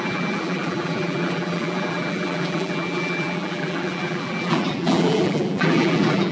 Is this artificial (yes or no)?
yes